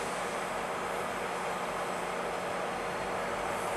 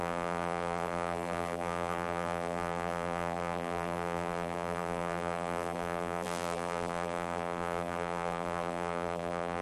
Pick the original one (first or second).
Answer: first